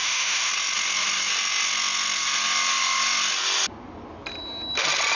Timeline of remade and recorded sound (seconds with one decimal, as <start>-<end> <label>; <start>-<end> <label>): 0.0-0.5 remade; 0.5-5.2 recorded